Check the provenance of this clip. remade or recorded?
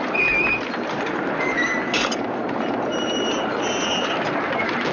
recorded